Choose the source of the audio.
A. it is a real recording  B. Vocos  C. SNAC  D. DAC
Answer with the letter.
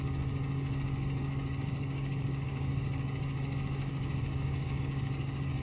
D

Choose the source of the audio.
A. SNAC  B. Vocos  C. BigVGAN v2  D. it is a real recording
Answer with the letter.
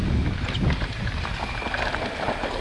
D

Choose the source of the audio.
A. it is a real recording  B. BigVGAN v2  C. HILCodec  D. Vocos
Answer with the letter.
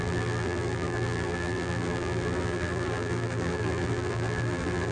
B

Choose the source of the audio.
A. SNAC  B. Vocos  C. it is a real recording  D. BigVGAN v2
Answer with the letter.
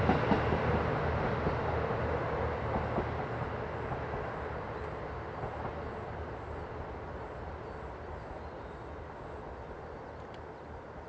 C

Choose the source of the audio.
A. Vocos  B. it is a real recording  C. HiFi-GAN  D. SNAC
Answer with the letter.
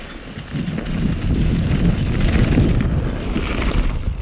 B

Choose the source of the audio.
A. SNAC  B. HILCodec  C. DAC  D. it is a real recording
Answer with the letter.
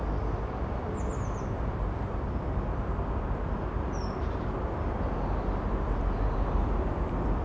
D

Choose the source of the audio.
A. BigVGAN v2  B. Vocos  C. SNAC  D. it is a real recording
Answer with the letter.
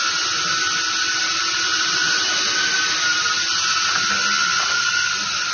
D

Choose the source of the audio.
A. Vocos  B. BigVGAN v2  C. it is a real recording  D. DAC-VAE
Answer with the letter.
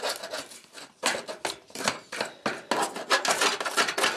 C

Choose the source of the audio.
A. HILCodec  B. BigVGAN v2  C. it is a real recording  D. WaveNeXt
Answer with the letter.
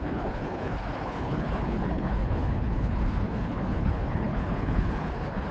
A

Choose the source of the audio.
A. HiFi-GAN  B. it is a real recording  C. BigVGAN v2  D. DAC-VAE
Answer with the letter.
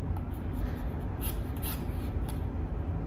B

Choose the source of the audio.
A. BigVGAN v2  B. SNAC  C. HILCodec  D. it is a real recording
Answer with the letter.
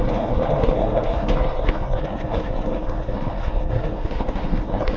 B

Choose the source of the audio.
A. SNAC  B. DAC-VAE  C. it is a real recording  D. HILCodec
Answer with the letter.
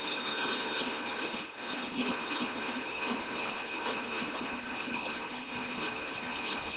D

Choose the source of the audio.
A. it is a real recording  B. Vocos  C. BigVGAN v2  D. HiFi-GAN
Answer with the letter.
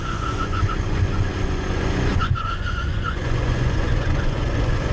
B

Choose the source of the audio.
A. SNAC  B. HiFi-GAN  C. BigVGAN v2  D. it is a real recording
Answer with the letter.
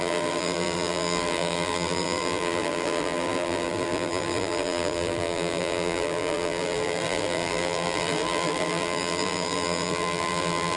C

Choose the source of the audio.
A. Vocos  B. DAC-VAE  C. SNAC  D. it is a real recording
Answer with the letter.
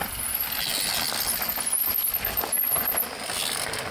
D